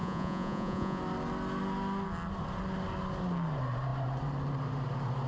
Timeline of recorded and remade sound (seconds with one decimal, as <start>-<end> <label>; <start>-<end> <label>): 0.0-1.0 remade; 1.0-5.3 recorded